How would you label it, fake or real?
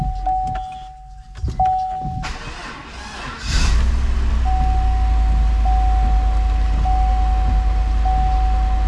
real